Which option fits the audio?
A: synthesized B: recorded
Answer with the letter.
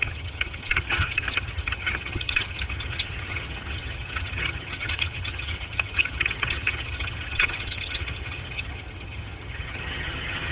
A